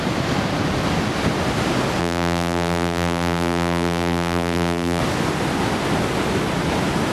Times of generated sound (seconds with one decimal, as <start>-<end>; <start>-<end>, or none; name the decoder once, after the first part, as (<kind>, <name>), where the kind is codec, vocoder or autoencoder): 2.0-5.0 (vocoder, BigVGAN v2)